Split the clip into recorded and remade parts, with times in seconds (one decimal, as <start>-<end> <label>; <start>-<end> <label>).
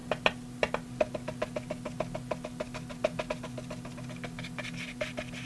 0.0-5.5 recorded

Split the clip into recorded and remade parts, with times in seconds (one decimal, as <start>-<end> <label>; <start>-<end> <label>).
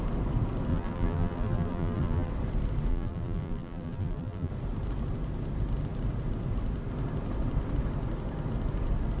0.0-0.7 recorded; 0.7-2.3 remade; 2.3-2.9 recorded; 2.9-4.5 remade; 4.5-9.2 recorded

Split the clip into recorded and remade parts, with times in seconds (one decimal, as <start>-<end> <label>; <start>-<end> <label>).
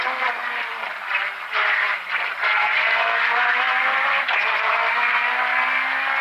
0.0-5.5 remade; 5.5-6.2 recorded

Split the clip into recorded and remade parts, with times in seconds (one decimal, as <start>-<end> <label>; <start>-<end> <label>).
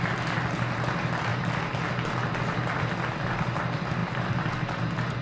0.0-1.3 recorded; 1.3-3.2 remade; 3.2-4.0 recorded; 4.0-4.8 remade; 4.8-5.2 recorded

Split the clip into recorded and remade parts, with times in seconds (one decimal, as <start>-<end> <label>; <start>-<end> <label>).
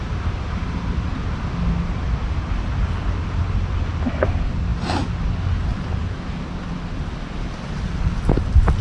0.0-8.8 recorded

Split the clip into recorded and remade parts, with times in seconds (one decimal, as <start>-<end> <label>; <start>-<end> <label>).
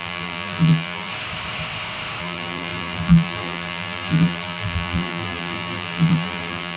0.0-1.1 remade; 1.1-2.2 recorded; 2.2-6.8 remade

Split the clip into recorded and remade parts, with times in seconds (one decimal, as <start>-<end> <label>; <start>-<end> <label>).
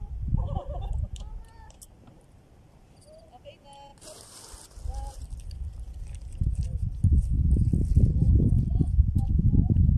0.0-3.9 remade; 3.9-5.1 recorded; 5.1-10.0 remade